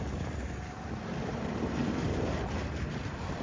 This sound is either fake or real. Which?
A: real